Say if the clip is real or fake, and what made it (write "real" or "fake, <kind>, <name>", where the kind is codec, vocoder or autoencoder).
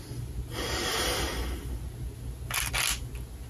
real